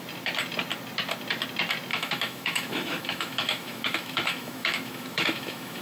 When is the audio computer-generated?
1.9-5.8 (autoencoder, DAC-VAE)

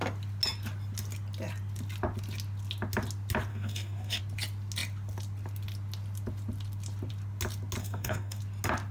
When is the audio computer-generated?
3.5-4.2 (codec, DAC); 7.8-8.4

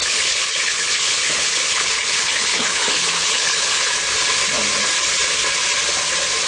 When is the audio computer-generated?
0.0-3.9 (codec, HILCodec)